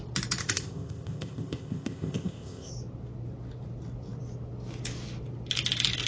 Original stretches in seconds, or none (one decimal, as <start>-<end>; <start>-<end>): 0.0-0.4; 2.7-6.1